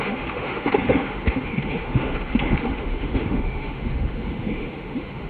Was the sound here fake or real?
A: fake